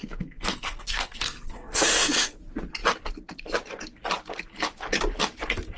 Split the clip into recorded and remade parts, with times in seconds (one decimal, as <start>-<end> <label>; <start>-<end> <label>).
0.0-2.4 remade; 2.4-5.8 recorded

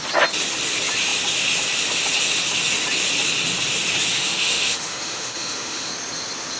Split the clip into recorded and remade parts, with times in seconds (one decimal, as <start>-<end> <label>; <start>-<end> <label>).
0.0-4.1 recorded; 4.1-5.9 remade; 5.9-6.6 recorded

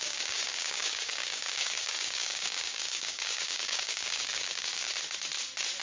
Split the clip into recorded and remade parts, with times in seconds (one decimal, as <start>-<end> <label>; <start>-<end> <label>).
0.0-4.9 remade; 4.9-5.8 recorded